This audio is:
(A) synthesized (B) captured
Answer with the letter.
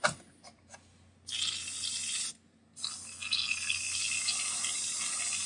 B